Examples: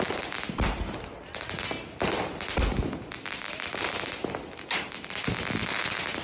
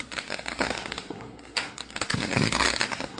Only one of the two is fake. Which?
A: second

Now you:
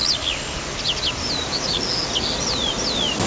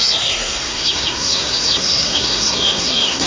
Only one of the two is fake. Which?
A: second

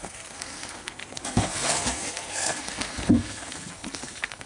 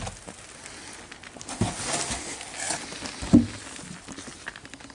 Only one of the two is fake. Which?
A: first